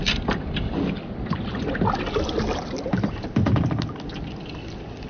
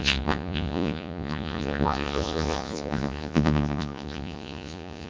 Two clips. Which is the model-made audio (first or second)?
second